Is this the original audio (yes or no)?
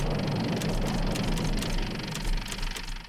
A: yes